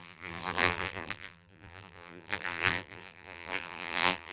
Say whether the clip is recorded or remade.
remade